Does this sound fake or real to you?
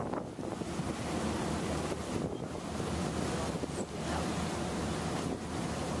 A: real